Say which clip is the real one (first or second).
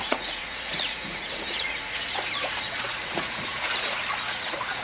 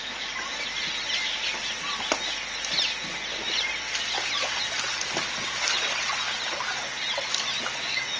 second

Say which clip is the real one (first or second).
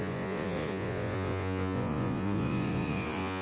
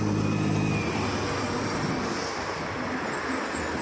second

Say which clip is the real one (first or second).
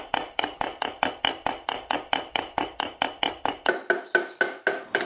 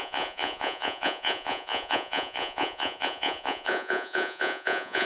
first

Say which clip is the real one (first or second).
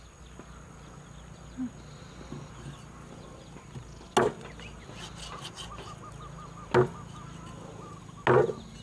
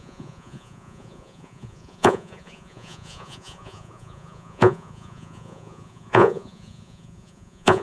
first